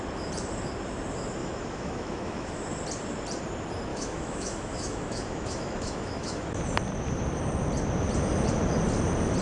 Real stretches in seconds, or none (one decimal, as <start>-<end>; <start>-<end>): 0.0-1.4; 2.6-3.9; 6.6-9.4